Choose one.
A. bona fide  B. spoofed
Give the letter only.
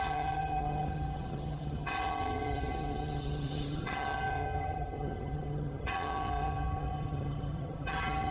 B